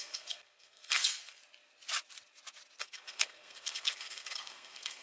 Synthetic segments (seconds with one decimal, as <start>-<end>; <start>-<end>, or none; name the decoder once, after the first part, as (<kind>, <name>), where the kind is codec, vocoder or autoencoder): 0.0-1.4 (codec, SNAC); 2.8-5.0